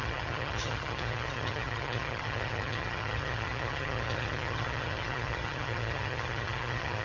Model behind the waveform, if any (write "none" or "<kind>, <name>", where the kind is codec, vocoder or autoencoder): vocoder, HiFi-GAN